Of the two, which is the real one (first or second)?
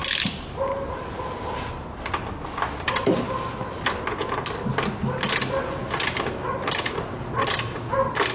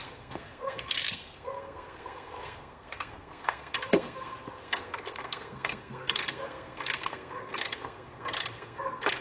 first